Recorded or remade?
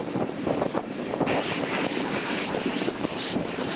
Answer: remade